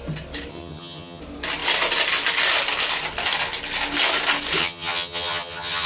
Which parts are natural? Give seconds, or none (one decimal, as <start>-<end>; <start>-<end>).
0.0-0.5; 1.2-4.6